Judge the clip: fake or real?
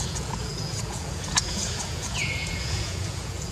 fake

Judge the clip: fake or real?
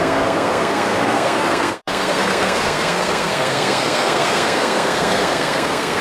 fake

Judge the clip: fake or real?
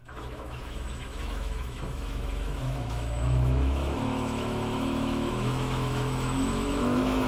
fake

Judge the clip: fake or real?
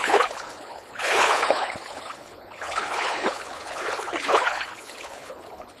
fake